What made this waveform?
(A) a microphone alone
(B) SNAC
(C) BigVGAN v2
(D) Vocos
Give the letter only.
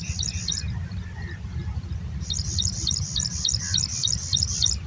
A